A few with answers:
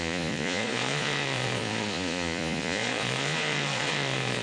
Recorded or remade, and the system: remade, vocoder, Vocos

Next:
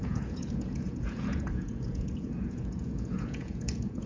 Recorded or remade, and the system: remade, vocoder, Vocos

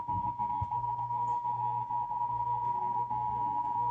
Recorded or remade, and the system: remade, codec, SNAC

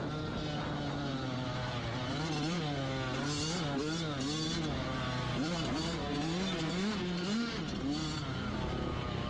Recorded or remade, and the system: recorded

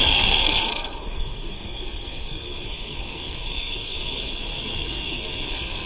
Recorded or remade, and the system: remade, codec, SNAC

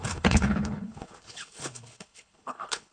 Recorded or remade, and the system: remade, codec, HILCodec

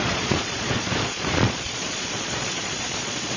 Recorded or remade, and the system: remade, vocoder, Vocos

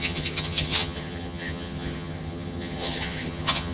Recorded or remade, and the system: remade, vocoder, HiFi-GAN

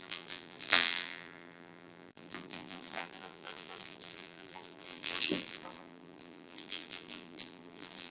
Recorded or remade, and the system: remade, vocoder, BigVGAN v2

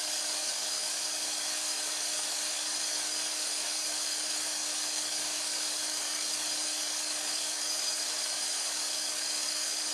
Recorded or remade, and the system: remade, codec, DAC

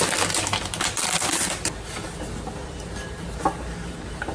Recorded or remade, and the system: recorded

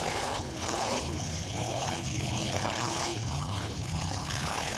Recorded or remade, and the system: remade, codec, HILCodec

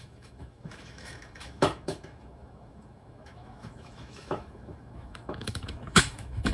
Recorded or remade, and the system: remade, autoencoder, DAC-VAE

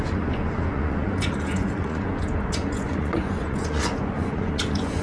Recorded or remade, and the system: remade, vocoder, Vocos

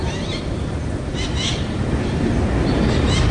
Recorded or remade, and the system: remade, vocoder, BigVGAN v2